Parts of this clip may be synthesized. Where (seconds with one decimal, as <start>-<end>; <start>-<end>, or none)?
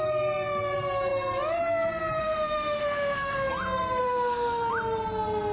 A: 2.2-3.5; 4.0-4.7